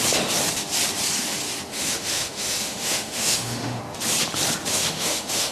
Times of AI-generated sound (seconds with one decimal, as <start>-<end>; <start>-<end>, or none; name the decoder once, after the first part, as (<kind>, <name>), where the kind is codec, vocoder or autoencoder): 1.7-3.8 (autoencoder, DAC-VAE); 4.7-5.5